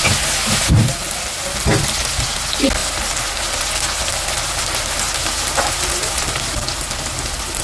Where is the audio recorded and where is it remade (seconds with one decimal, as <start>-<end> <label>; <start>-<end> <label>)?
0.0-7.6 recorded